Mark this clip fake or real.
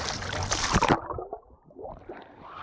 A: fake